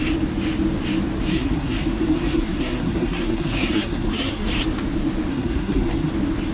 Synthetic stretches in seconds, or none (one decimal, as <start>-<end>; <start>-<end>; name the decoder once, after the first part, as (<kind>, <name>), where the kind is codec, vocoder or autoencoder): 1.3-4.5 (codec, SNAC); 5.3-6.1